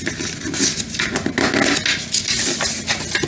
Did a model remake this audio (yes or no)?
no